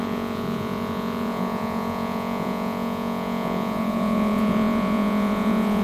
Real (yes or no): no